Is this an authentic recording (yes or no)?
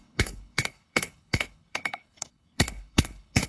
no